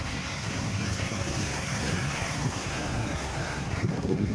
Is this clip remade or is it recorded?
remade